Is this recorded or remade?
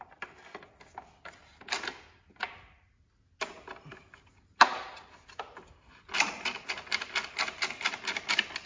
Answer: recorded